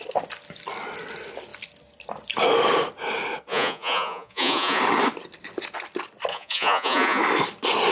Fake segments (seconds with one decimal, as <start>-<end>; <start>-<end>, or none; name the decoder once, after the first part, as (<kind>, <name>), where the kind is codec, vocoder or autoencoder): 3.5-4.8 (vocoder, Vocos); 6.3-7.2